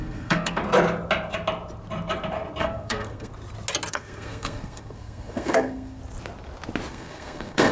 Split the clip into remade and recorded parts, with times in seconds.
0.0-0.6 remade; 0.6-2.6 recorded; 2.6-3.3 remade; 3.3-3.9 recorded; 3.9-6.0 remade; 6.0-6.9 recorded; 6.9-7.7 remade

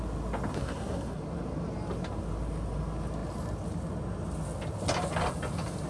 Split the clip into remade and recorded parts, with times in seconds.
0.0-0.5 recorded; 0.5-1.2 remade; 1.2-5.9 recorded

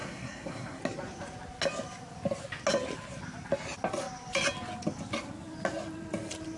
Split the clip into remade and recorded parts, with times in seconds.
0.0-0.8 remade; 0.8-6.6 recorded

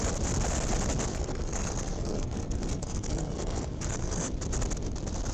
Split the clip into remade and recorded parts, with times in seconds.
0.0-1.1 recorded; 1.1-4.3 remade; 4.3-5.3 recorded

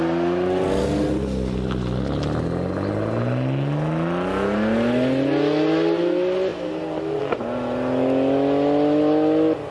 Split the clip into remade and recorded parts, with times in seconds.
0.0-9.7 recorded